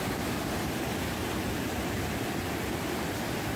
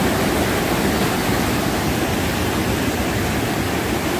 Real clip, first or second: second